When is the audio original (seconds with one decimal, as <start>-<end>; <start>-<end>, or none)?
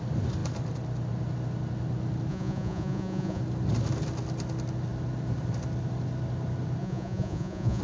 0.0-2.3; 3.4-6.8